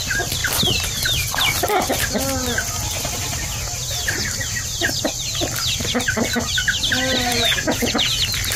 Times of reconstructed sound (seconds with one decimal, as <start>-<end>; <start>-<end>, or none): 7.3-8.1